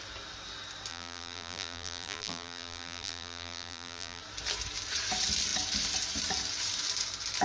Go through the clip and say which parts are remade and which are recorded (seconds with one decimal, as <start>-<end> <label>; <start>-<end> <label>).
0.0-0.9 recorded; 0.9-4.2 remade; 4.2-7.4 recorded